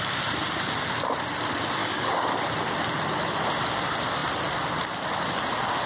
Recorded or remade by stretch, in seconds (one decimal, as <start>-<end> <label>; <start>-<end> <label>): 0.0-1.8 recorded; 1.8-2.3 remade; 2.3-5.9 recorded